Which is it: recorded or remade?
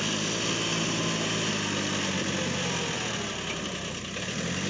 recorded